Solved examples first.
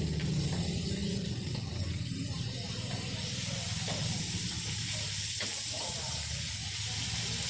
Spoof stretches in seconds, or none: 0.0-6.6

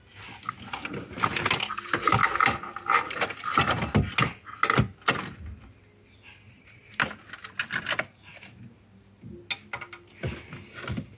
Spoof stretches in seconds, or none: none